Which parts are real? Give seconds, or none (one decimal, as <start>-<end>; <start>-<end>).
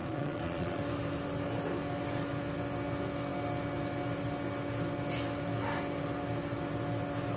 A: 0.8-7.4